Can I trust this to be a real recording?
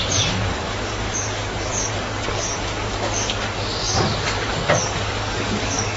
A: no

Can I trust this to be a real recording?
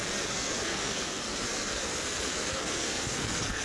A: no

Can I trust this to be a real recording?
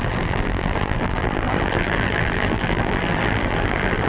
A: no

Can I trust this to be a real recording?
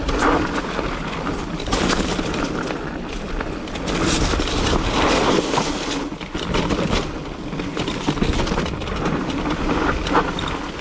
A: yes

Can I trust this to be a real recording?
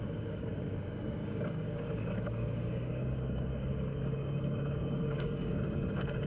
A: no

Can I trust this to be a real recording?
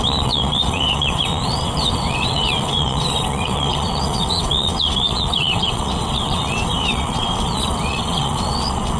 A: no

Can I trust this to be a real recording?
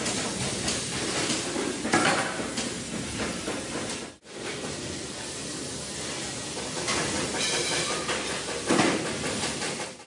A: yes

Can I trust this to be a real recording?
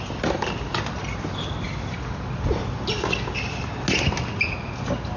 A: yes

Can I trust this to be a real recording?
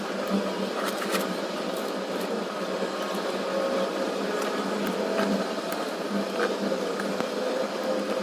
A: yes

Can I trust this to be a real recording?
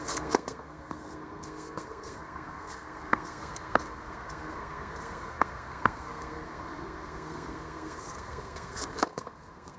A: no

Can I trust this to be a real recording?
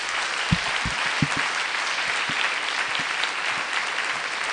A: yes